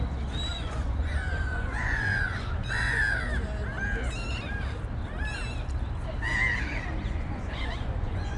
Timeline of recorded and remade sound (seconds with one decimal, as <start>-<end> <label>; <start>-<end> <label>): 0.0-0.5 recorded; 0.5-3.0 remade; 3.0-7.0 recorded; 7.0-8.4 remade